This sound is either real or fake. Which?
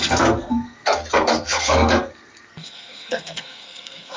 fake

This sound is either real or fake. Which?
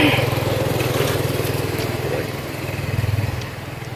real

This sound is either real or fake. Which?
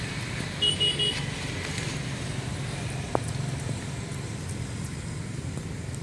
real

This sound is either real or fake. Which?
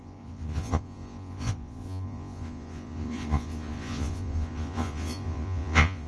fake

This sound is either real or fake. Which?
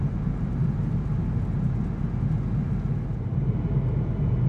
real